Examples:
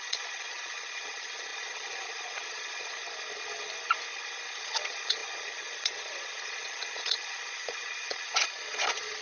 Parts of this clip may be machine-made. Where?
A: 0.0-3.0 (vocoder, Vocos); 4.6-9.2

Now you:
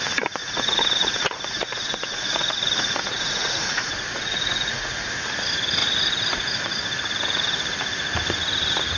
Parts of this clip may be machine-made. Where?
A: 0.4-5.1 (vocoder, Vocos)

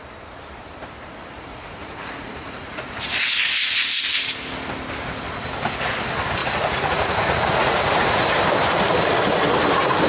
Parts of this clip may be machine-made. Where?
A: 1.5-2.9 (vocoder, Vocos); 6.4-8.3

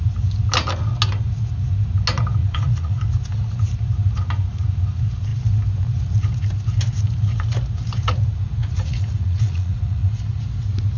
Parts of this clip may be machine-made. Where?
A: 2.4-3.0 (vocoder, Vocos); 8.6-10.4

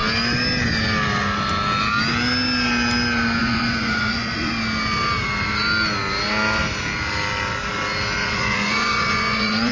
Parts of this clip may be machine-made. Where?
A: 3.4-4.5 (vocoder, Vocos); 8.2-9.7

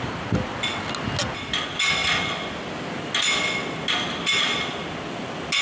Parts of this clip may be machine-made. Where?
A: none

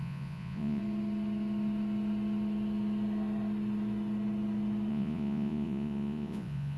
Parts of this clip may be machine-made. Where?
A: 0.0-0.8 (vocoder, Vocos); 4.9-6.8